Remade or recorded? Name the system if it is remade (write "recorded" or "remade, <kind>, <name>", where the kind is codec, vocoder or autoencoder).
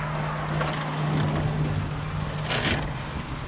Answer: recorded